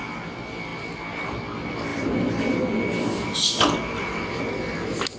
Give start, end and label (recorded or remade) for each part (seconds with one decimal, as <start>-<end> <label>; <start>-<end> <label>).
0.0-1.9 recorded; 1.9-4.4 remade; 4.4-5.2 recorded